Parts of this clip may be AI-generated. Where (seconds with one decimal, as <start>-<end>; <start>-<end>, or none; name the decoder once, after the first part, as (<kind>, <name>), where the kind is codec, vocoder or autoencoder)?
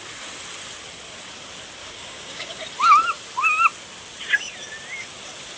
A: 1.8-2.5 (codec, DAC)